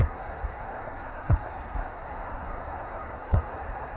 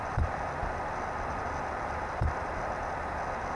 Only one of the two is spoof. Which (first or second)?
first